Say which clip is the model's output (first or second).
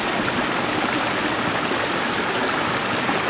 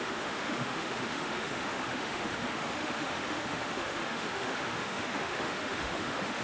second